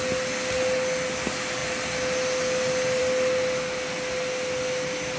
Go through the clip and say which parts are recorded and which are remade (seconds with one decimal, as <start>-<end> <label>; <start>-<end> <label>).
0.0-5.2 recorded